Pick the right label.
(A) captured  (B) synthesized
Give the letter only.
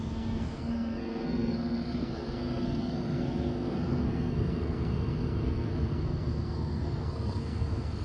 B